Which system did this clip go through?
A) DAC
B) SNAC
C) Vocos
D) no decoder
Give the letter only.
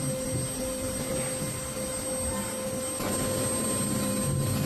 D